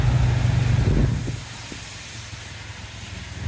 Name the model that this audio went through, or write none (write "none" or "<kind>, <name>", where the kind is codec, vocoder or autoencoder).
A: none